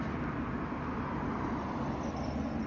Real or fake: real